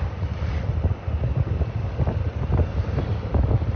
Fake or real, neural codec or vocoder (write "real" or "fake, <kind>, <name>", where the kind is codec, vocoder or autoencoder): real